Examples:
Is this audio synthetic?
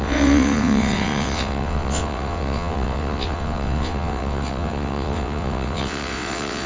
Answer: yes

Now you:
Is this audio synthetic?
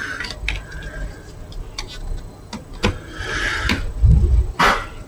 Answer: no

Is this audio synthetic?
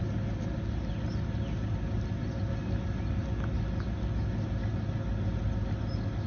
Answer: no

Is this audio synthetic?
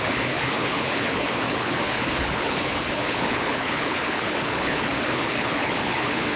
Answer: yes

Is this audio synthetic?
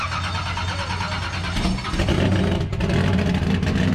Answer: no